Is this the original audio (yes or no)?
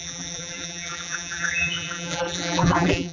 no